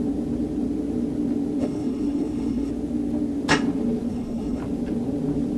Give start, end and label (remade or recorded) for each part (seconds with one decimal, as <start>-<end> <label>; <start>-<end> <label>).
0.0-1.6 recorded; 1.6-2.7 remade; 2.7-4.1 recorded; 4.1-4.6 remade; 4.6-5.6 recorded